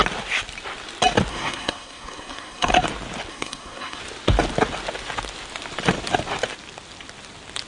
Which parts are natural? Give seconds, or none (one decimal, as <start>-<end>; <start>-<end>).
0.0-1.3; 2.7-3.3; 4.0-7.7